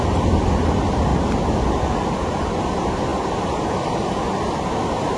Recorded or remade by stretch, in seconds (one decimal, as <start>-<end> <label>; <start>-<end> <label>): 0.0-1.1 remade; 1.1-2.6 recorded; 2.6-5.2 remade